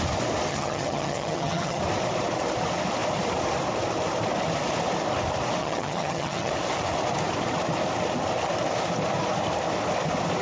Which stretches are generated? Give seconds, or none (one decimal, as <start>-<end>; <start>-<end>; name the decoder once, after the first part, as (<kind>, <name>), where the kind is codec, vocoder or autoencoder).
0.5-1.8 (vocoder, HiFi-GAN); 5.6-6.5